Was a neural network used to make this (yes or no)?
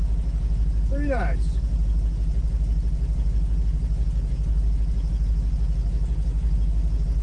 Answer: no